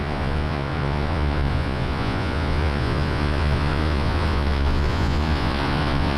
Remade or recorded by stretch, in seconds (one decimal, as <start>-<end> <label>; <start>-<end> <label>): 0.0-6.2 remade